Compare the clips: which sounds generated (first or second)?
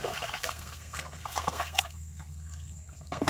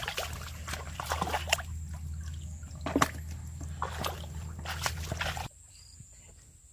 first